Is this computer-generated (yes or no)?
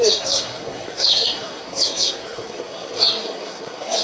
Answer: yes